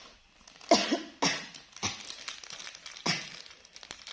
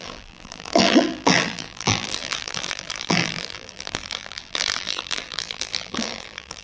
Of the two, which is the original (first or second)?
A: first